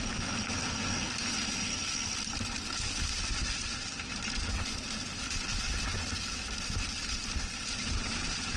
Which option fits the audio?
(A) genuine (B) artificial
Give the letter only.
A